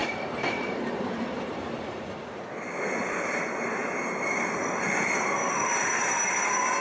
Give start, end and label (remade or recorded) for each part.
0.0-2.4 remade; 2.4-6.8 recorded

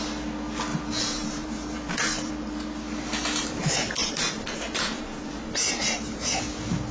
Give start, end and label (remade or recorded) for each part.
0.0-0.7 recorded; 0.7-2.3 remade; 2.3-4.0 recorded; 4.0-6.3 remade; 6.3-6.9 recorded

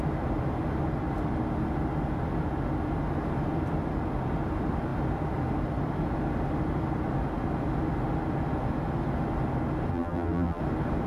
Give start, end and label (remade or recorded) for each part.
0.0-9.9 recorded; 9.9-10.6 remade; 10.6-11.1 recorded

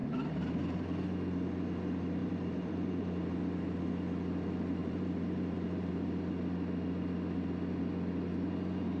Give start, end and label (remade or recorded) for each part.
0.0-0.5 remade; 0.5-2.2 recorded; 2.2-3.3 remade; 3.3-4.8 recorded; 4.8-5.9 remade; 5.9-9.0 recorded

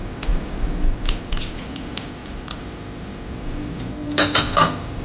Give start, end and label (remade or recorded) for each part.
0.0-2.2 recorded; 2.2-2.8 remade; 2.8-5.0 recorded